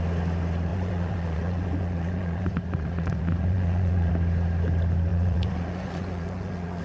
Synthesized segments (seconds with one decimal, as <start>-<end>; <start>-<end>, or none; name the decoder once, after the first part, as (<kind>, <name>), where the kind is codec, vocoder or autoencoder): 0.7-4.1 (vocoder, Vocos); 5.1-6.8